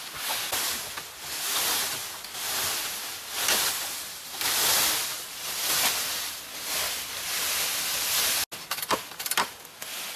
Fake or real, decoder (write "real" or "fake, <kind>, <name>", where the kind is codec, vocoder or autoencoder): real